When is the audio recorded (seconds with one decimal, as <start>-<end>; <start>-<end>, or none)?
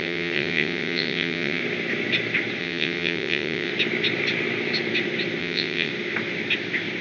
1.6-2.6; 3.7-5.4; 5.9-7.0